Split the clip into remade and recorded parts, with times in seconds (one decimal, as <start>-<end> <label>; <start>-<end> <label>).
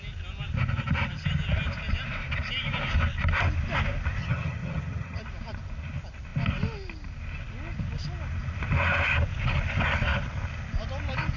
0.0-4.2 recorded; 4.2-5.2 remade; 5.2-11.4 recorded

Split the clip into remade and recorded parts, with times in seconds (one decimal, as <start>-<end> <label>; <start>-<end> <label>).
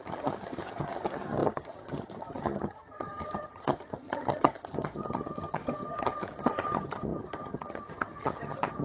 0.0-8.8 remade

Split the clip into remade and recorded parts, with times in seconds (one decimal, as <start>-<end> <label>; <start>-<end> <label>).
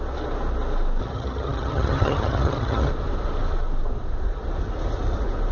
0.0-1.0 recorded; 1.0-2.9 remade; 2.9-5.5 recorded